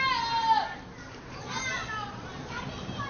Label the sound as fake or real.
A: real